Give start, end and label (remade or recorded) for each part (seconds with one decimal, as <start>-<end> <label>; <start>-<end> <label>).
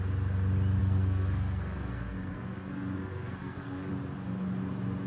0.0-0.8 recorded; 0.8-3.9 remade; 3.9-5.1 recorded